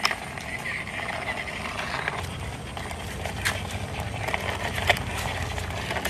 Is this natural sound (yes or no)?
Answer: yes